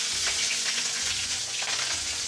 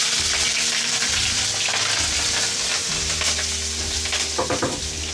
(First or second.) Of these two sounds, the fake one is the first